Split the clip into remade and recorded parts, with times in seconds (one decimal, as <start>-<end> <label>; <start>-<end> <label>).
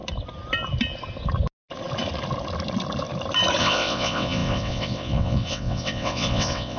0.0-3.6 recorded; 3.6-6.8 remade